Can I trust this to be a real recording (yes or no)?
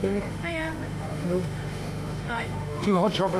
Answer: no